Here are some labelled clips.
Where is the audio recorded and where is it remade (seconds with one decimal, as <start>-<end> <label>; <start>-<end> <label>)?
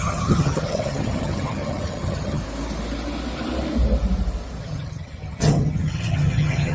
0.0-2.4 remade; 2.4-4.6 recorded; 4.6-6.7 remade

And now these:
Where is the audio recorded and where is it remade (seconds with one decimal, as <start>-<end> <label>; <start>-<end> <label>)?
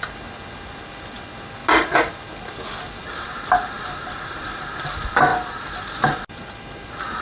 0.0-5.3 recorded; 5.3-6.0 remade; 6.0-7.2 recorded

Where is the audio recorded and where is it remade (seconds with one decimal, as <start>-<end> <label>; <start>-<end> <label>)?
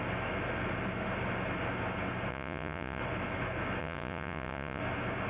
0.0-2.3 recorded; 2.3-3.0 remade; 3.0-3.8 recorded; 3.8-4.8 remade; 4.8-5.3 recorded